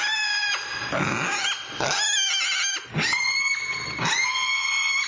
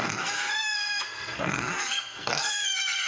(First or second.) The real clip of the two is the first